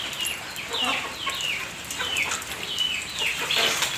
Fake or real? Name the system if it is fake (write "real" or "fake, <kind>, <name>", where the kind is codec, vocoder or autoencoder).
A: real